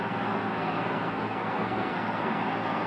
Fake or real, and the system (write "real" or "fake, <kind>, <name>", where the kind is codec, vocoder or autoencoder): fake, codec, SNAC